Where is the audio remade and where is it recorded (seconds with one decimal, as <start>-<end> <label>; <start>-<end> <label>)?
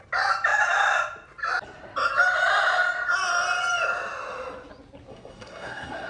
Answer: 0.0-5.1 recorded; 5.1-6.1 remade